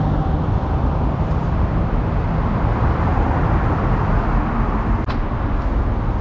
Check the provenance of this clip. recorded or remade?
recorded